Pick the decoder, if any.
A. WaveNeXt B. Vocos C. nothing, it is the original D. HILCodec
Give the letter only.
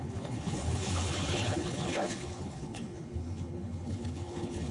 D